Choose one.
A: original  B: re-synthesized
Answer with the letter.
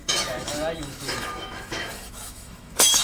B